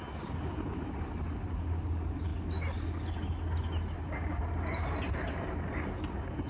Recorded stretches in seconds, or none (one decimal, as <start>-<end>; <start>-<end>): 0.0-6.5